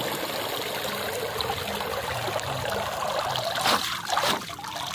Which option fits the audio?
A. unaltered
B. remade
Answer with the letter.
A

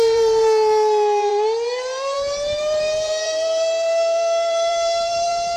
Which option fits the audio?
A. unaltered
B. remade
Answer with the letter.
B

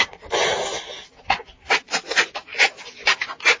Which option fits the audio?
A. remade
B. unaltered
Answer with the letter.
B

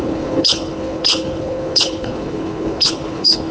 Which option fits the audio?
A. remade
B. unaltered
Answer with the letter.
A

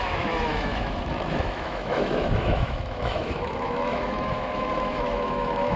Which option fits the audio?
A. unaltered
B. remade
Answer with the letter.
B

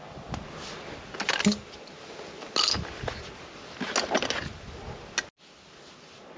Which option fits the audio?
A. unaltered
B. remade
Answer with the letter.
A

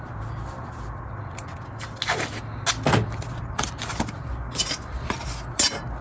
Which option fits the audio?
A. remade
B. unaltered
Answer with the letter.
B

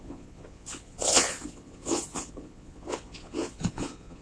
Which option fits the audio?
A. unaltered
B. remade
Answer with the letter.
B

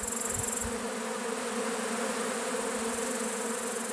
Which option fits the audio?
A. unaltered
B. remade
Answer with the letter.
A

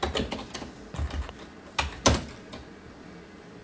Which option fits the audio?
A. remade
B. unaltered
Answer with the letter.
B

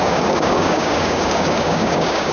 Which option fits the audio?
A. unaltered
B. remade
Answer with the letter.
B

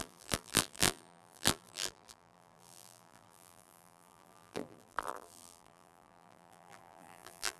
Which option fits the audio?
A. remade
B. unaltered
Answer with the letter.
A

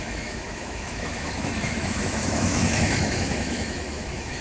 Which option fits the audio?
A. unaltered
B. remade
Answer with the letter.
B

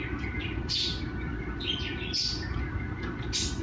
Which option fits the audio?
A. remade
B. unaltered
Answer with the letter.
B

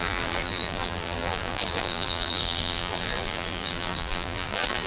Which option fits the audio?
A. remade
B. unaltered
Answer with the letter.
A